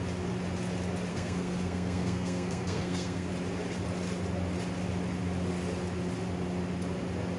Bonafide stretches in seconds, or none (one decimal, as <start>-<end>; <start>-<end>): 0.0-1.1; 3.3-7.4